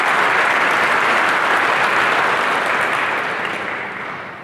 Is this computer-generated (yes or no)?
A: no